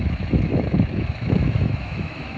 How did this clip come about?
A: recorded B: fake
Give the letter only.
B